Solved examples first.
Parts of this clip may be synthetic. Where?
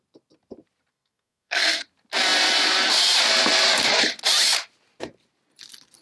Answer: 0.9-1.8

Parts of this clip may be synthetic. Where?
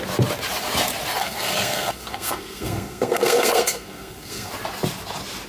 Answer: 1.2-4.5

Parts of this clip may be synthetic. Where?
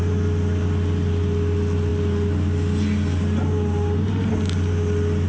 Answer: none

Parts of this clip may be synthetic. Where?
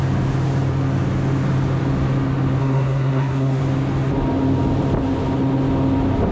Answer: 2.6-3.6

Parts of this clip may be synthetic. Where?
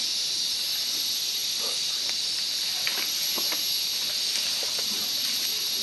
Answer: none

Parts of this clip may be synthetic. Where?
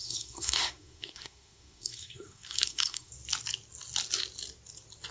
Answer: 0.0-3.1